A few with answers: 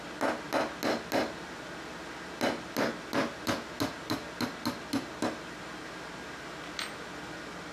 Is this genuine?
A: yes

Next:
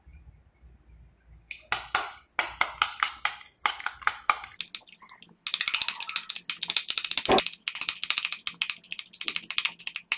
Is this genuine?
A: yes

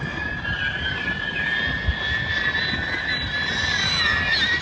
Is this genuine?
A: yes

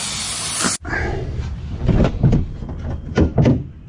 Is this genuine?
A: yes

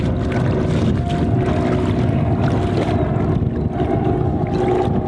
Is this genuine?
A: yes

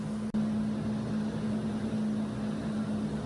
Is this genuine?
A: yes